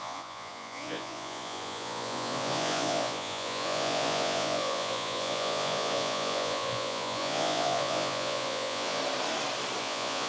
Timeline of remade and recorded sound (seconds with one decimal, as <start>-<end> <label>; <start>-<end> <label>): 0.0-9.0 remade; 9.0-9.8 recorded; 9.8-10.3 remade